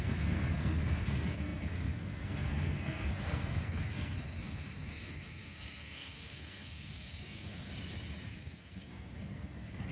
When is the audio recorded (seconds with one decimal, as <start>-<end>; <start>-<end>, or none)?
7.7-8.3